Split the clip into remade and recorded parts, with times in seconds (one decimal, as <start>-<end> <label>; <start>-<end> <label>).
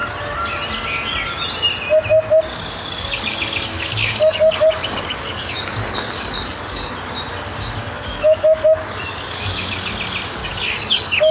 0.0-2.5 recorded; 2.5-6.9 remade; 6.9-7.8 recorded; 7.8-9.9 remade; 9.9-10.4 recorded; 10.4-11.3 remade